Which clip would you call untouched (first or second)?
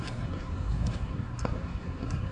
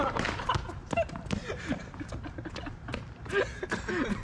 second